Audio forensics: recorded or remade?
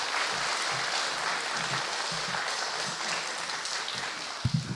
recorded